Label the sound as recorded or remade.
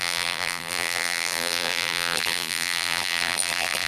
remade